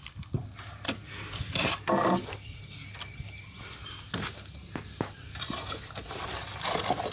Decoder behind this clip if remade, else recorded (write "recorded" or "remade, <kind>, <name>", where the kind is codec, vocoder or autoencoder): recorded